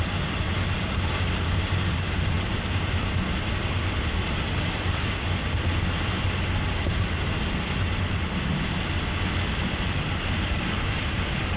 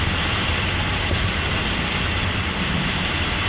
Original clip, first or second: first